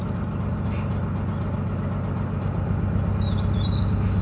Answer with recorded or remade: recorded